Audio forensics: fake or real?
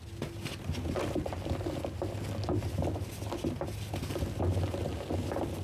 real